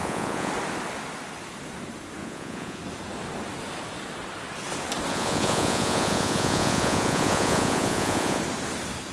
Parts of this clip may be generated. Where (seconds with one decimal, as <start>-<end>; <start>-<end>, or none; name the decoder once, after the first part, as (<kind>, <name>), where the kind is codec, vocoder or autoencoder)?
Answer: 0.0-0.5 (vocoder, Vocos); 2.2-2.8; 5.1-8.4